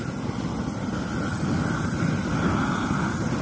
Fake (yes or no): no